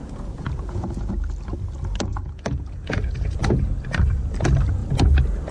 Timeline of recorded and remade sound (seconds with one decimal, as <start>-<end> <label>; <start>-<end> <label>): 0.0-1.1 remade; 1.1-2.1 recorded; 2.1-3.4 remade; 3.4-5.5 recorded